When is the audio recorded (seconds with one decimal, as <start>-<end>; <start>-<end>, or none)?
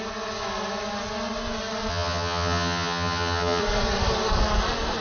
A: 0.0-1.9; 3.6-5.0